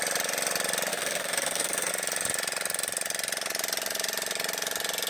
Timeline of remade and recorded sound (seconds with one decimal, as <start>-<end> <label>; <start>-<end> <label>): 0.0-0.9 recorded; 0.9-1.9 remade; 1.9-5.1 recorded